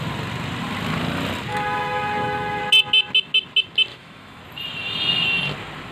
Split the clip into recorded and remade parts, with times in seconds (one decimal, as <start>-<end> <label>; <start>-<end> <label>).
0.0-1.5 recorded; 1.5-2.6 remade; 2.6-3.9 recorded; 3.9-4.4 remade; 4.4-5.9 recorded